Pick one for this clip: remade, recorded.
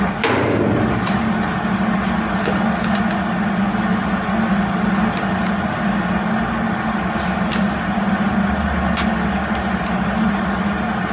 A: recorded